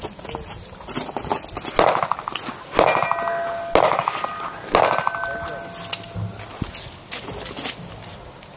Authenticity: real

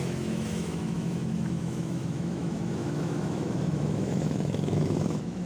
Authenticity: fake